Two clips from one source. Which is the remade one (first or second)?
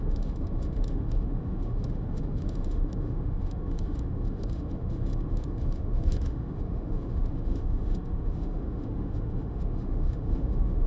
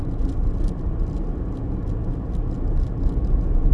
first